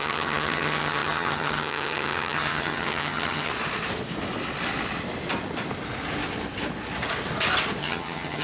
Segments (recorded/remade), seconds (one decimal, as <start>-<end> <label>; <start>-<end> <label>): 0.0-3.5 remade; 3.5-7.8 recorded; 7.8-8.4 remade